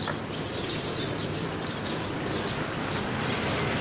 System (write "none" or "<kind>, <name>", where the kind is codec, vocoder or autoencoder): vocoder, BigVGAN v2